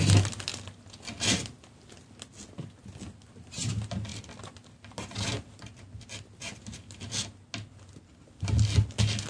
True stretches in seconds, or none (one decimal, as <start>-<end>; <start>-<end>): 0.0-9.3